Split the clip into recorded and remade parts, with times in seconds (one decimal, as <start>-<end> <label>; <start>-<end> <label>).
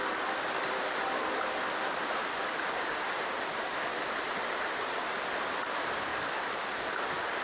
0.0-6.1 recorded; 6.1-7.4 remade